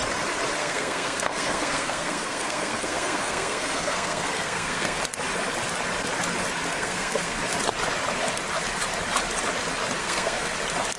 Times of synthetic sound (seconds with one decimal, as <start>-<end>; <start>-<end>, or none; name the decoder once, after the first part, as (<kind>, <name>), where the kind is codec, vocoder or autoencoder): 0.6-5.0 (codec, SNAC); 6.7-7.4; 10.0-10.5